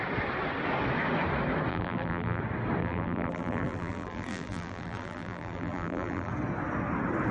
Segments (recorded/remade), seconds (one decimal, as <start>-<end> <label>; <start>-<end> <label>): 0.0-1.7 recorded; 1.7-2.4 remade; 2.4-2.8 recorded; 2.8-6.3 remade; 6.3-7.3 recorded